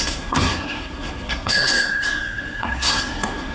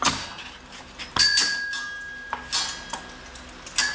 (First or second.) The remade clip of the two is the first